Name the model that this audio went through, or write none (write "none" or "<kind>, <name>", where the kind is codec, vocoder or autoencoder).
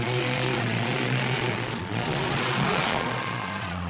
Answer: vocoder, Vocos